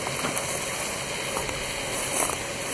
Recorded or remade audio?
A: recorded